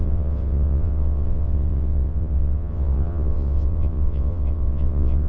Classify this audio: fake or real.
fake